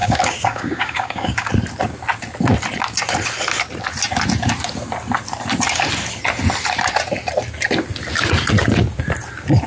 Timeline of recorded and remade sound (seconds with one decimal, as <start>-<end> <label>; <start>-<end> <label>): 0.0-1.5 remade; 1.5-9.7 recorded